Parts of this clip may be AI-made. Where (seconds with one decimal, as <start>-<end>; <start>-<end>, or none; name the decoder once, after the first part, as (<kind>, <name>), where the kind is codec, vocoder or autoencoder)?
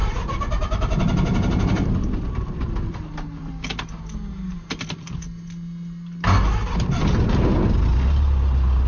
0.0-4.0 (vocoder, BigVGAN v2)